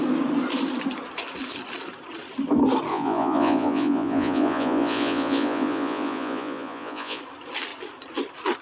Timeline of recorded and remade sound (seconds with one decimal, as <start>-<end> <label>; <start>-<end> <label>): 0.0-2.9 recorded; 2.9-7.2 remade; 7.2-8.6 recorded